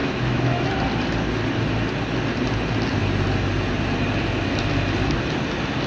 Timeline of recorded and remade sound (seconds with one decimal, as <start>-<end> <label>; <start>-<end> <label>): 0.0-0.7 remade; 0.7-5.9 recorded